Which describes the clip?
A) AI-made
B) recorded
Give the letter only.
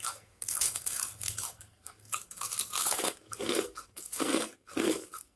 A